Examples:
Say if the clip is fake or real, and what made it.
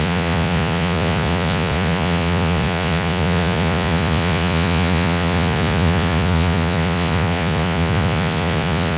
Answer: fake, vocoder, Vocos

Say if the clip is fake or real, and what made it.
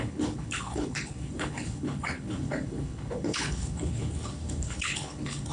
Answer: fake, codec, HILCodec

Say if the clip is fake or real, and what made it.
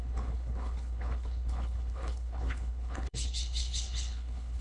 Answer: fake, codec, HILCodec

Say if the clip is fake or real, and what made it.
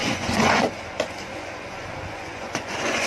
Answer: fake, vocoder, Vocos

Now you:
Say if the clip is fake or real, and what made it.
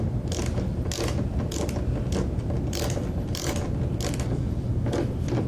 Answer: real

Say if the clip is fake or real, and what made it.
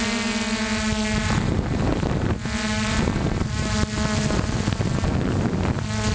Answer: real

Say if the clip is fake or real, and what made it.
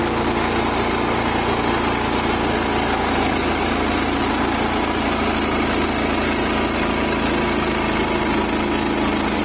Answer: real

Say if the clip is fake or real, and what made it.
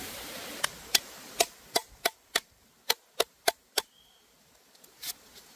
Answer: real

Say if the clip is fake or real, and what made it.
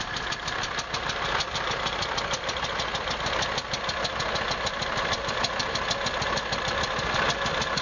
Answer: real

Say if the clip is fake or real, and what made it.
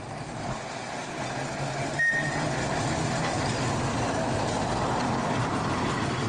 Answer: real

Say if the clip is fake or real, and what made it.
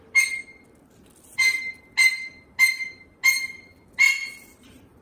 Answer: real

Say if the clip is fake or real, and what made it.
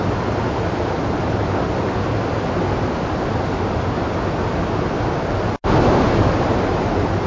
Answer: real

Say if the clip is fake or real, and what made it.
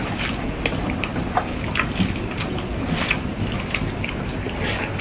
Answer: real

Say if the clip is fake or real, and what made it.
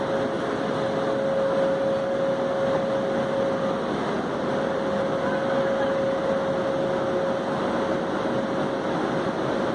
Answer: real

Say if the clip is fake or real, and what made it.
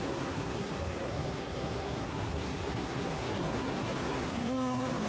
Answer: fake, codec, SNAC